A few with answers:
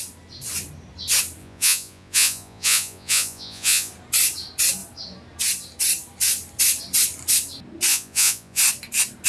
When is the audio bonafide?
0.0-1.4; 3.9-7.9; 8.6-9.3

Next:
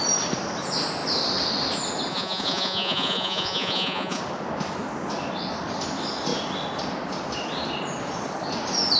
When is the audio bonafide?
0.0-2.1; 4.2-9.0

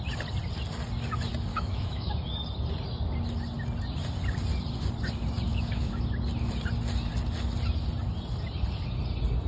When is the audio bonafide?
0.0-1.5; 2.1-5.5; 6.0-9.5

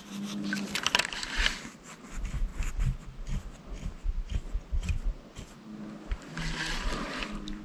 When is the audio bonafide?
0.0-7.6

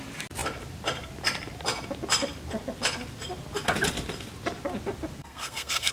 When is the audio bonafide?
0.0-5.2

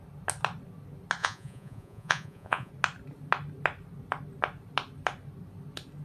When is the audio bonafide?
0.0-1.2; 2.7-6.0

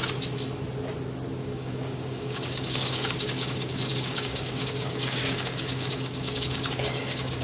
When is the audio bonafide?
0.0-1.4

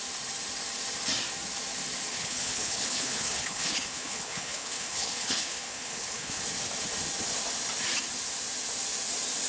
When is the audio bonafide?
0.0-2.1; 6.4-9.5